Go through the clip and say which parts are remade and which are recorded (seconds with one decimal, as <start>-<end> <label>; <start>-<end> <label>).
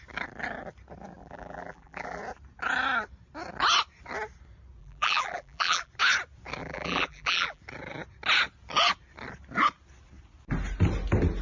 0.0-1.2 recorded; 1.2-2.2 remade; 2.2-4.8 recorded; 4.8-5.9 remade; 5.9-6.6 recorded; 6.6-7.6 remade; 7.6-11.4 recorded